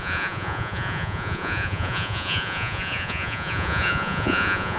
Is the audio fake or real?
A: fake